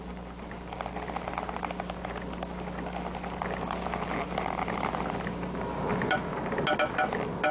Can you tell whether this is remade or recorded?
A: recorded